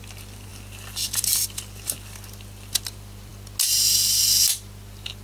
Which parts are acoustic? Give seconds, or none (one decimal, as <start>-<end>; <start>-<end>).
0.0-5.2